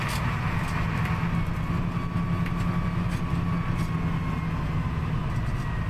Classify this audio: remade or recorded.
recorded